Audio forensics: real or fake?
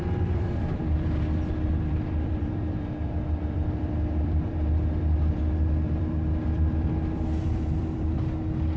fake